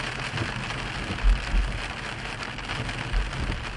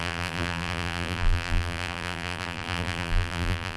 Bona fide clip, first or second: first